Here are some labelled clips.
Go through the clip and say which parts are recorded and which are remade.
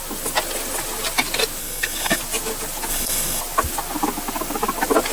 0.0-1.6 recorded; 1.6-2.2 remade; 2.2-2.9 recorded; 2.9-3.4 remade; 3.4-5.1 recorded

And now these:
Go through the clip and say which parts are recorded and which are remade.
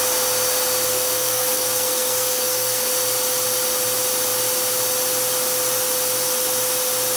0.0-0.9 recorded; 0.9-2.9 remade; 2.9-7.2 recorded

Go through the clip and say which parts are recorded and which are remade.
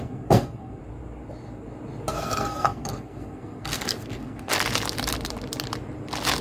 0.0-0.8 remade; 0.8-2.1 recorded; 2.1-4.5 remade; 4.5-6.4 recorded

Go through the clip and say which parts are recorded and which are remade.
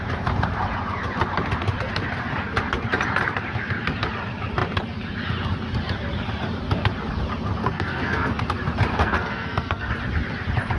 0.0-7.6 recorded; 7.6-8.4 remade; 8.4-8.9 recorded; 8.9-9.9 remade; 9.9-10.8 recorded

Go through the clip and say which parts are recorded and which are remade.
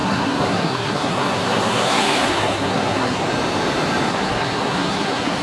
0.0-3.2 remade; 3.2-4.1 recorded; 4.1-5.4 remade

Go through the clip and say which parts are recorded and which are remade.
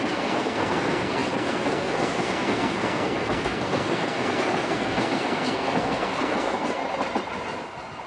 0.0-6.8 remade; 6.8-8.1 recorded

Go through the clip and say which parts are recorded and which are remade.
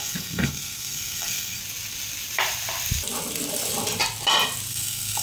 0.0-1.6 remade; 1.6-4.7 recorded; 4.7-5.2 remade